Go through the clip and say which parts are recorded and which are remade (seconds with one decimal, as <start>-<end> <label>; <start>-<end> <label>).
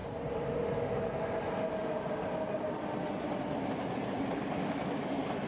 0.0-4.4 recorded; 4.4-5.1 remade; 5.1-5.5 recorded